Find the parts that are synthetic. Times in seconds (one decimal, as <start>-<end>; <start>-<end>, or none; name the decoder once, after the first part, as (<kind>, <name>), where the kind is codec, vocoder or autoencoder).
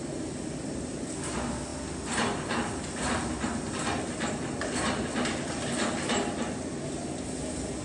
none